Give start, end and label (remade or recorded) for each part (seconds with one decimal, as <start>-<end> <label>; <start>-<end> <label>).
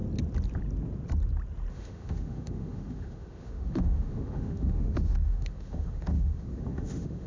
0.0-1.7 recorded; 1.7-7.3 remade